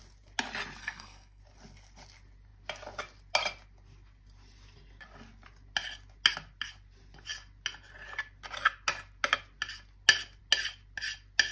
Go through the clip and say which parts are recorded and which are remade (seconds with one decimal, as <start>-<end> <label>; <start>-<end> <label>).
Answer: 0.0-0.8 recorded; 0.8-1.4 remade; 1.4-11.5 recorded